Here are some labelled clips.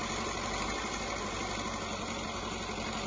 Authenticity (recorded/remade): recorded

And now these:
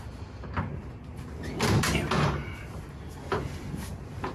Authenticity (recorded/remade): recorded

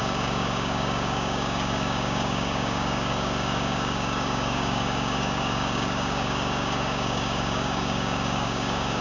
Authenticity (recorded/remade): remade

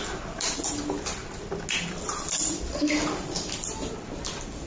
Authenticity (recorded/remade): recorded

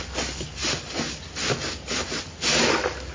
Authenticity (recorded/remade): recorded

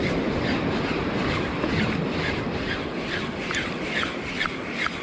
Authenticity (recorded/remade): recorded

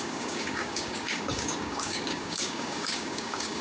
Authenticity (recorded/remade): remade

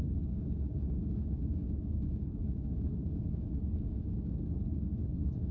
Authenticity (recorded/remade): remade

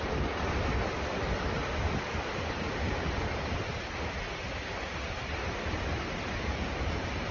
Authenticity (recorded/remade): recorded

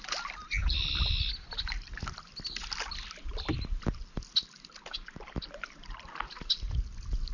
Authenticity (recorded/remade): recorded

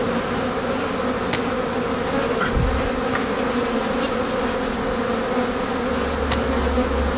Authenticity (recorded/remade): recorded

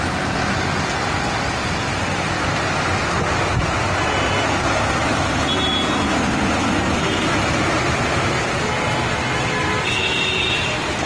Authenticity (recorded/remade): recorded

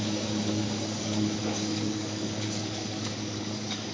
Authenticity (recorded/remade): remade